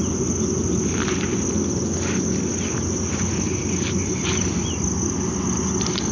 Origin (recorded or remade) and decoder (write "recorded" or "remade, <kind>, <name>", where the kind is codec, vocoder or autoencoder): recorded